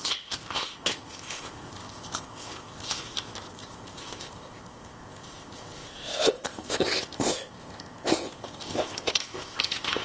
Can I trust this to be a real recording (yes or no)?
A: no